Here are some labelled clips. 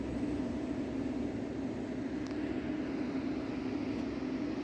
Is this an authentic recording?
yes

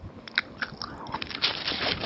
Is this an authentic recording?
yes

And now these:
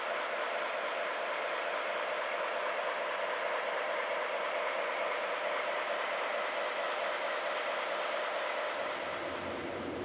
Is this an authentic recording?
yes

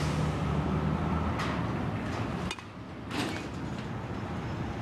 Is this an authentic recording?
yes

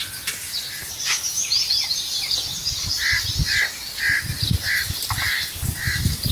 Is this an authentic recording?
yes